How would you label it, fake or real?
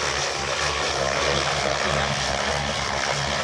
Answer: real